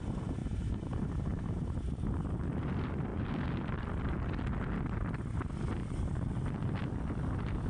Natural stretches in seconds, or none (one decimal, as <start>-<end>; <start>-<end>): 0.0-0.4; 1.6-5.8; 6.3-7.7